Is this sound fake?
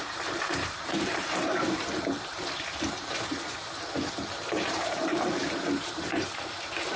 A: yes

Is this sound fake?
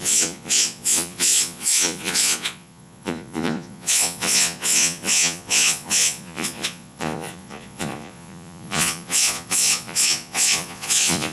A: yes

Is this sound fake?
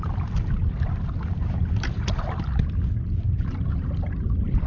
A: no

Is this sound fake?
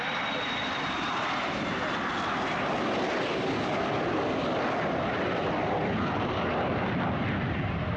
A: no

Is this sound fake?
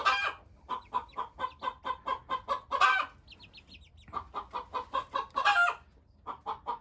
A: no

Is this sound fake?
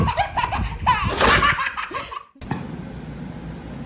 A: no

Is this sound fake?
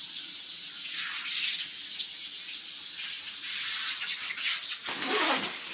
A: no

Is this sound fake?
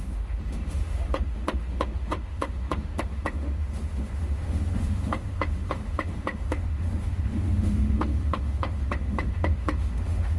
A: yes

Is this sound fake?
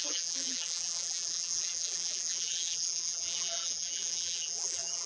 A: yes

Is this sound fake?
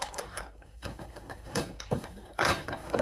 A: yes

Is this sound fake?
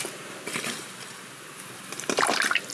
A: yes